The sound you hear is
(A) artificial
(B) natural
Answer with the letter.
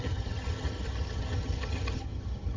A